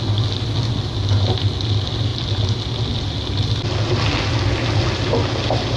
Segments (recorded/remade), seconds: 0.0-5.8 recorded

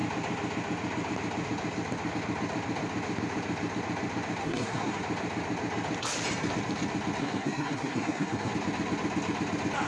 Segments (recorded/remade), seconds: 0.0-4.4 recorded; 4.4-5.0 remade; 5.0-7.2 recorded; 7.2-8.5 remade; 8.5-9.9 recorded

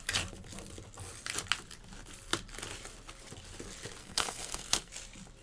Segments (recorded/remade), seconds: 0.0-4.0 recorded; 4.0-4.9 remade; 4.9-5.4 recorded

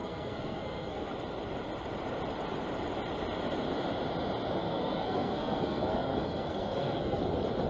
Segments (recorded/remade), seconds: 0.0-1.1 remade; 1.1-4.6 recorded; 4.6-7.2 remade; 7.2-7.7 recorded